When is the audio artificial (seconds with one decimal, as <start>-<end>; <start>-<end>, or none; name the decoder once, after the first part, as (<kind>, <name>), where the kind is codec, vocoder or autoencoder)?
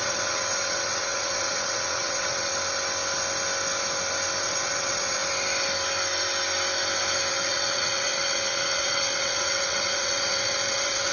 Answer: 0.0-2.5 (vocoder, WaveNeXt); 4.4-5.2; 7.3-11.1